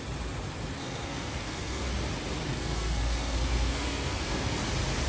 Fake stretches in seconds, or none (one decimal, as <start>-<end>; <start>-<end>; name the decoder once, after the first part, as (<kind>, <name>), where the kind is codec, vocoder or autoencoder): 0.8-1.9 (codec, SNAC); 2.5-4.6

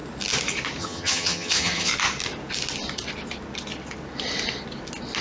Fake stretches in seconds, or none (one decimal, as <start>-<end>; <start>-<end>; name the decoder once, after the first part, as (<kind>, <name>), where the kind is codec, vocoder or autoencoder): 0.8-1.9 (vocoder, HiFi-GAN)

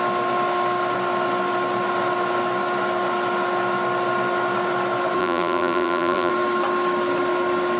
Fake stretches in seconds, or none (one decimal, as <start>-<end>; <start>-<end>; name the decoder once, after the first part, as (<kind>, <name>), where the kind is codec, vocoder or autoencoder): 5.2-6.3 (vocoder, BigVGAN v2)

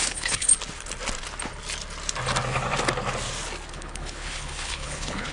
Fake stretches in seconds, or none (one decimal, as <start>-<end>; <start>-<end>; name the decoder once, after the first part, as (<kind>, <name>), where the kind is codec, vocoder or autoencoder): 0.0-0.5 (codec, HILCodec); 3.7-5.3

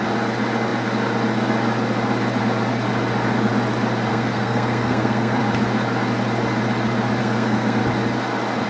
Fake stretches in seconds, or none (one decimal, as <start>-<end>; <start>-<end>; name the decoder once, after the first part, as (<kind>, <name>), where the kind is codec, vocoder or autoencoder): 4.1-5.4 (codec, SNAC); 7.2-7.8

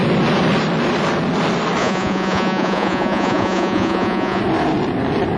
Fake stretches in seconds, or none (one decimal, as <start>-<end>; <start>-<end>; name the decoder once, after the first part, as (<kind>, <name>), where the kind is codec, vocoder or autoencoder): 1.8-4.4 (vocoder, Vocos)

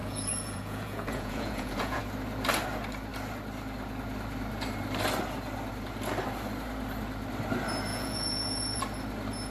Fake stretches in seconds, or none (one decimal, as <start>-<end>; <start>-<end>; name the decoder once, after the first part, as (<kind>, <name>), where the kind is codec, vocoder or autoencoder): 0.0-2.0 (vocoder, Vocos); 7.9-8.8